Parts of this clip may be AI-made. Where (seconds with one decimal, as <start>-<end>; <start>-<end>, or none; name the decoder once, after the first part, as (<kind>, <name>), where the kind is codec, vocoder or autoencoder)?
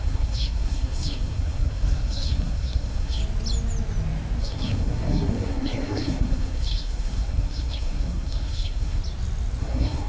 0.0-3.2 (codec, SNAC); 4.4-9.0; 9.6-10.1